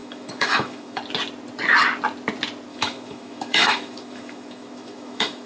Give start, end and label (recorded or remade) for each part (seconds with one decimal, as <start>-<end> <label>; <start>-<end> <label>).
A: 0.0-1.0 remade; 1.0-2.7 recorded; 2.7-5.5 remade